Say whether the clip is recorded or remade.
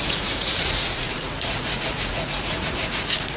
remade